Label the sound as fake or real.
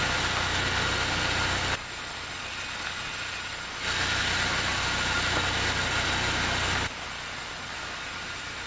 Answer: real